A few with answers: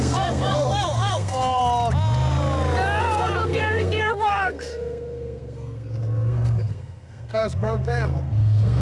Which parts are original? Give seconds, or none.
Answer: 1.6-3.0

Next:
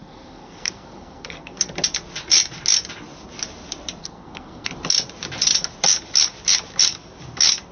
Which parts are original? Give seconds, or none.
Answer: 1.7-4.0; 4.7-7.7

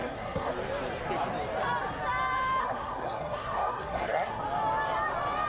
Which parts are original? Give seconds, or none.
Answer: 0.5-2.6; 4.4-5.5

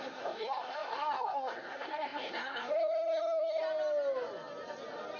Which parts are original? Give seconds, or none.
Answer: 3.6-5.2

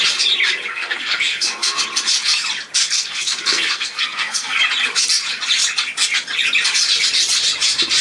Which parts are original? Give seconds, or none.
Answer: 0.0-0.7; 1.8-2.8; 4.6-8.0

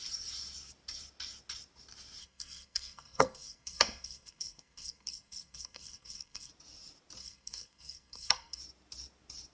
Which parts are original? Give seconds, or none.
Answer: 0.0-2.2; 6.5-7.2; 8.6-9.5

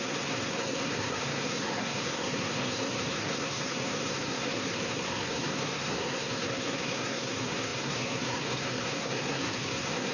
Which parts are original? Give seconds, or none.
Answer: none

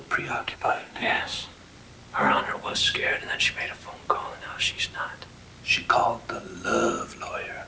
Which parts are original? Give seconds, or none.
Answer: 0.0-0.4; 1.2-7.7